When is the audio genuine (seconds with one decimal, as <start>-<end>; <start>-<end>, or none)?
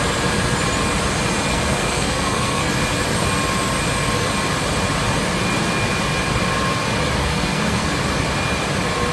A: 0.0-1.5; 2.7-7.2; 8.0-9.1